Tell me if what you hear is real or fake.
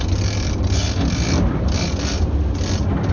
real